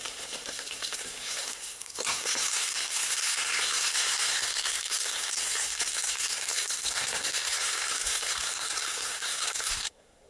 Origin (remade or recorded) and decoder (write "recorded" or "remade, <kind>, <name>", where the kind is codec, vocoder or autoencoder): remade, codec, SNAC